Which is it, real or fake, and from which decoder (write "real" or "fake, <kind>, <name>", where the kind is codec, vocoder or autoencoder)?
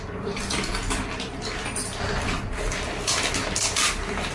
real